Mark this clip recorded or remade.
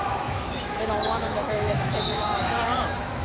remade